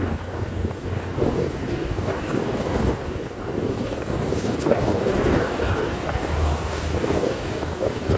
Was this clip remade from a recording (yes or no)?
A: yes